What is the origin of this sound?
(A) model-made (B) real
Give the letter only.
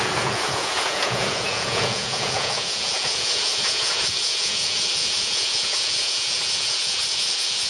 A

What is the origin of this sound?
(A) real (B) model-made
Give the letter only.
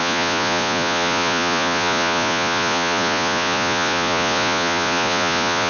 B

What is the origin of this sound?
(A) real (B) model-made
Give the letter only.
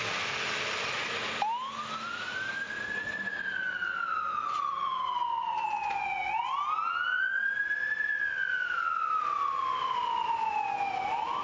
A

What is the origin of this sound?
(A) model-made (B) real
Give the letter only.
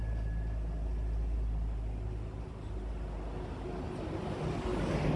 B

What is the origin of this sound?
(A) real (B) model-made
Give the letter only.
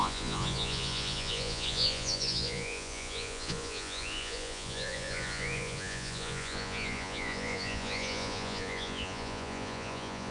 B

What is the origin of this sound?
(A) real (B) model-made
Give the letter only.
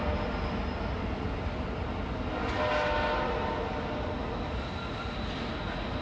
A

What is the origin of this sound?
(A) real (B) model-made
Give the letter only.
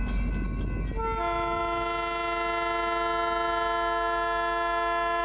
A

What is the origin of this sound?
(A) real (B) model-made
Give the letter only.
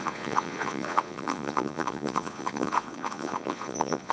B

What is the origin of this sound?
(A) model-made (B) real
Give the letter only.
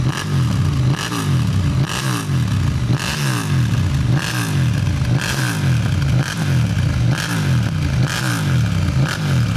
B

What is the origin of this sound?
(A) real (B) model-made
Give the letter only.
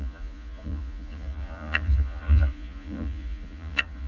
B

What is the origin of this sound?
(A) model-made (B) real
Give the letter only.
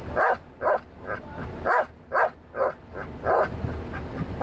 B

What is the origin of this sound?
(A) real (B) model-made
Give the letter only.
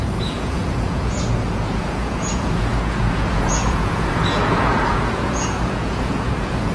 B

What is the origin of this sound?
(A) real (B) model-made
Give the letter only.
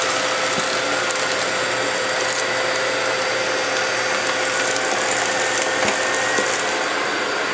A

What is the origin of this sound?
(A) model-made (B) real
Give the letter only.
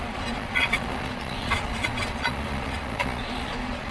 A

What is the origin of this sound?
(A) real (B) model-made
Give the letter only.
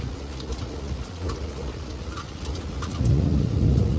B